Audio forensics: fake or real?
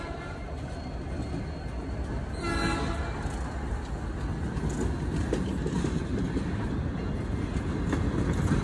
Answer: real